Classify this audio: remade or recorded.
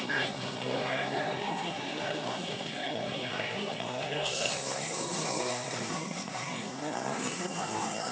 remade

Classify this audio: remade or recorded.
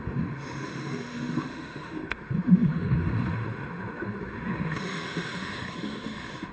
remade